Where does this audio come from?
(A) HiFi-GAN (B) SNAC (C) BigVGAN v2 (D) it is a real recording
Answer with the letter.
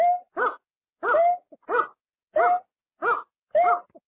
D